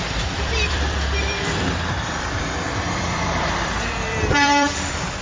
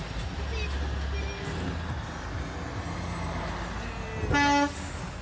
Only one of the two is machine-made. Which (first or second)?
first